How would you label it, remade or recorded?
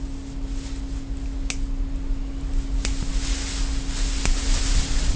recorded